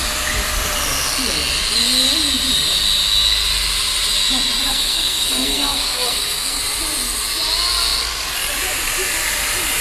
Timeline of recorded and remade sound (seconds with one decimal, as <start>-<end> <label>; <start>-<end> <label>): 0.0-4.7 recorded; 4.7-6.6 remade; 6.6-9.8 recorded